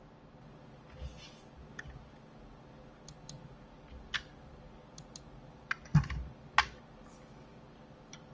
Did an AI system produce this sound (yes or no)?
no